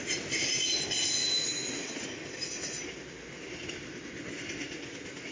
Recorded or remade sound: recorded